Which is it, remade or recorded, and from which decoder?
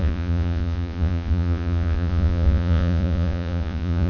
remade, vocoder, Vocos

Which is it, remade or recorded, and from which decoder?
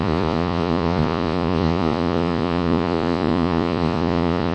remade, vocoder, Vocos